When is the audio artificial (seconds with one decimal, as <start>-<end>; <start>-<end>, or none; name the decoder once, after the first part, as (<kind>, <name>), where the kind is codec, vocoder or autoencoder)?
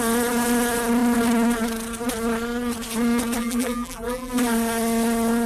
3.4-4.3 (vocoder, BigVGAN v2)